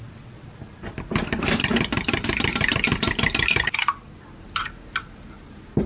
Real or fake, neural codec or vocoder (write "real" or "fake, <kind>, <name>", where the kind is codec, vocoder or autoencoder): real